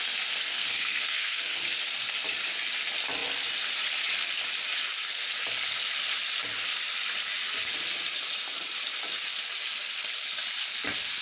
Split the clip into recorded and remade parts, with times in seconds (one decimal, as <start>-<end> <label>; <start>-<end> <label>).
0.0-0.5 recorded; 0.5-1.6 remade; 1.6-11.2 recorded